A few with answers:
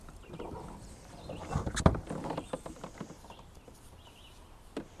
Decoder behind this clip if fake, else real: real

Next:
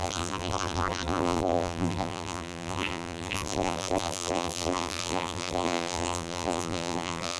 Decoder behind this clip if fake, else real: fake, vocoder, BigVGAN v2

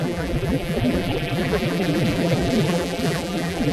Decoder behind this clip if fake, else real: fake, vocoder, BigVGAN v2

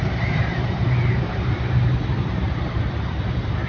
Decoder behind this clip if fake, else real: fake, vocoder, BigVGAN v2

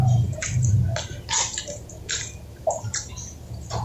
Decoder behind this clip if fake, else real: fake, vocoder, BigVGAN v2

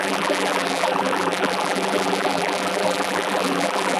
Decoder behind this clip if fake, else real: fake, vocoder, BigVGAN v2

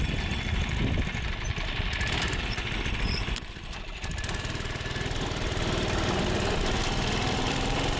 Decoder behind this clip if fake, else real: fake, vocoder, BigVGAN v2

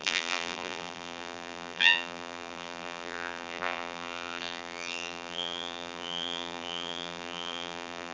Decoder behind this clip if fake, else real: fake, vocoder, BigVGAN v2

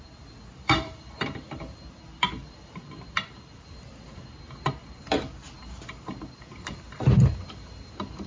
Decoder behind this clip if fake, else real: fake, vocoder, BigVGAN v2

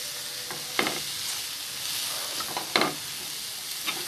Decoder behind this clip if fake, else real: real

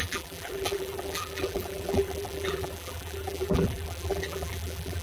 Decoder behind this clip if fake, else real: fake, vocoder, BigVGAN v2